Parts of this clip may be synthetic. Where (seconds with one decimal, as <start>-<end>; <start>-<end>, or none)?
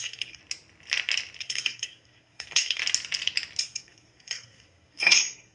0.0-0.4; 1.4-2.8; 3.6-5.5